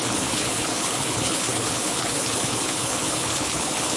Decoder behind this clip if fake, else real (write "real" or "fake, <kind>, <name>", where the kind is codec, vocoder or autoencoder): fake, codec, HILCodec